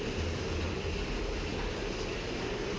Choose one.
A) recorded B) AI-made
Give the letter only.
A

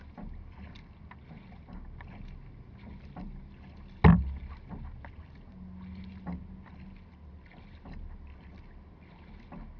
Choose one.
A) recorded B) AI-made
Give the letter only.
A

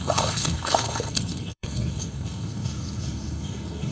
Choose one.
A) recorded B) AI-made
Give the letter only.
B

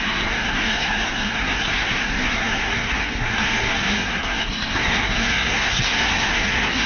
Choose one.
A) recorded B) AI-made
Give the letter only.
B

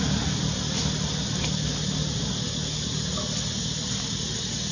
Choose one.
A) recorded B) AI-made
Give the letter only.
A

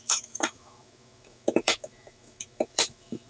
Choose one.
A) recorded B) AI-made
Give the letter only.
B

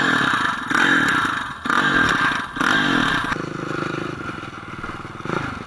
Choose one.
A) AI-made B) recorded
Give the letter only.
B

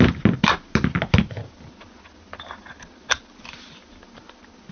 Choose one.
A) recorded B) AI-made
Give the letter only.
A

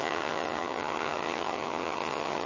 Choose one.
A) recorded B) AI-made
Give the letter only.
B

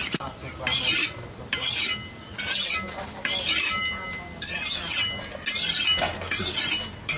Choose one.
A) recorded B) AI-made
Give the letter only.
A